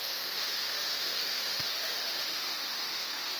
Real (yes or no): no